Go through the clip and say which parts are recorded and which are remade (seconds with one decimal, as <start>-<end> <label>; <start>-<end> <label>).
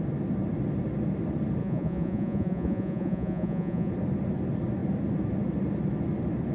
0.0-1.6 recorded; 1.6-3.9 remade; 3.9-6.5 recorded